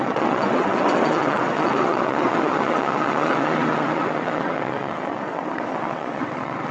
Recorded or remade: remade